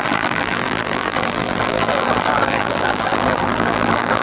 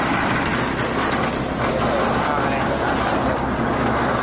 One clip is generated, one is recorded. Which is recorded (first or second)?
second